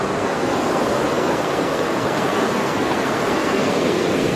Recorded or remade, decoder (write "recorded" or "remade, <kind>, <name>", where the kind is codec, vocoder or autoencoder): remade, codec, SNAC